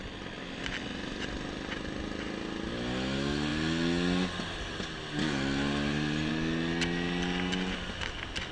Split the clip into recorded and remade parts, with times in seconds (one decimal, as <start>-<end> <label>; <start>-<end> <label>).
0.0-8.5 recorded